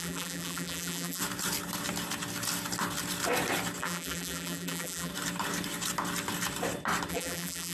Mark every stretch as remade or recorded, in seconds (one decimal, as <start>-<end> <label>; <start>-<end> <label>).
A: 0.0-1.2 remade; 1.2-3.8 recorded; 3.8-5.1 remade; 5.1-7.1 recorded; 7.1-7.7 remade